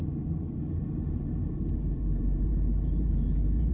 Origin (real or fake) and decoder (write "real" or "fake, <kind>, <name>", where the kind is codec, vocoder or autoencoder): fake, vocoder, BigVGAN v2